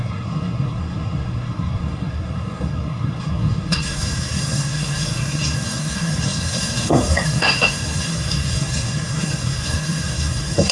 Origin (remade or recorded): remade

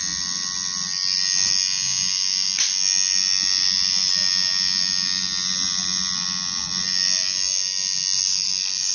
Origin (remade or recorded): recorded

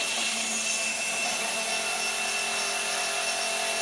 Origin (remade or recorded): recorded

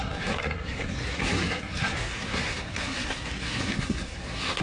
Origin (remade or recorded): remade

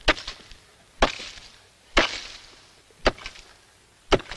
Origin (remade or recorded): recorded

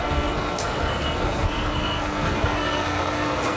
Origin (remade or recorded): remade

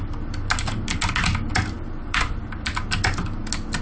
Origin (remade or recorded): recorded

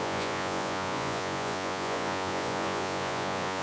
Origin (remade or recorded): remade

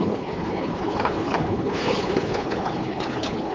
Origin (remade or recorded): remade